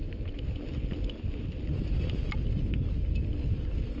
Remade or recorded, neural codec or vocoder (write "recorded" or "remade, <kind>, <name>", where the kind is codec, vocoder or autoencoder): recorded